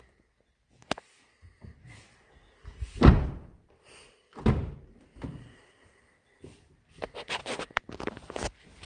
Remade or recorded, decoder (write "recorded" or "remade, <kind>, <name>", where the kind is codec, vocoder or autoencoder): recorded